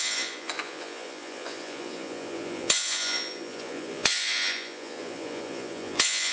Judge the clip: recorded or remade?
remade